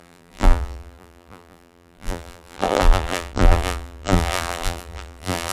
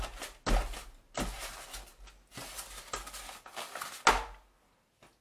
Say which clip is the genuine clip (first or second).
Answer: second